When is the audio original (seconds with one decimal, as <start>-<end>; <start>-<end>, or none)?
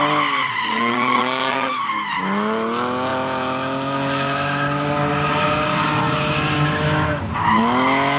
0.0-0.4; 1.7-8.2